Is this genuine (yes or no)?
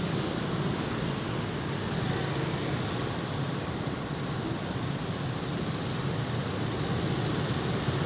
yes